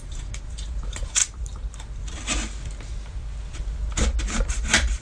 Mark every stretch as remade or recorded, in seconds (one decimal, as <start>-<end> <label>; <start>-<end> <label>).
0.0-1.2 remade; 1.2-4.2 recorded; 4.2-5.0 remade